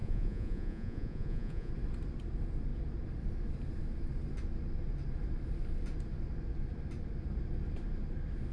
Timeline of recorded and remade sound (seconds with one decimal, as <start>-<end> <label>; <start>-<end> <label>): 0.0-1.7 remade; 1.7-8.5 recorded